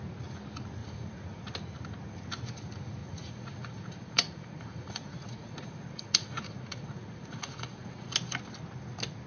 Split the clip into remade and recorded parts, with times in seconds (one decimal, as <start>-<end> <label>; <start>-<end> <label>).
0.0-0.8 recorded; 0.8-1.4 remade; 1.4-3.0 recorded; 3.0-8.1 remade; 8.1-9.3 recorded